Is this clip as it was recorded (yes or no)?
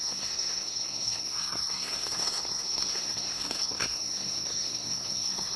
no